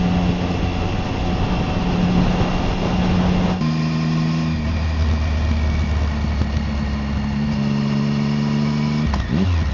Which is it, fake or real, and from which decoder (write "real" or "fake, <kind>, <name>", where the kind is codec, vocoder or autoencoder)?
real